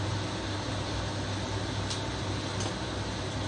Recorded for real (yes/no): yes